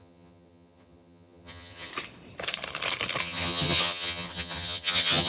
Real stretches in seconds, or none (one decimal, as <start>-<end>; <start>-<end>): 1.9-3.2